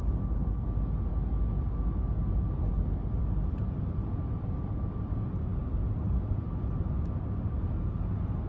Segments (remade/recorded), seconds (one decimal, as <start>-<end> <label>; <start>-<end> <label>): 0.0-8.5 recorded